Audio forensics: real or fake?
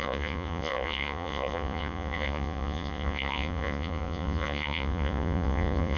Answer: fake